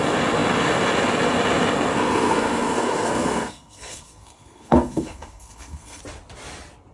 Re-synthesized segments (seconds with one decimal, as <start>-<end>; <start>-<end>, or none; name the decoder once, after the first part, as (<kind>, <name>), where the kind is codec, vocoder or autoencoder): 1.9-6.0 (codec, SNAC)